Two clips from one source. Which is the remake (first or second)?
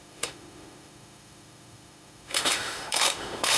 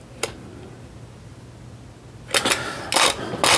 first